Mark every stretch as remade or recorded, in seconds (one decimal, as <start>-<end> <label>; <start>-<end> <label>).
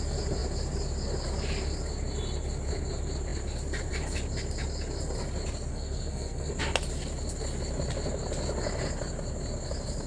0.0-5.7 recorded; 5.7-6.6 remade; 6.6-10.1 recorded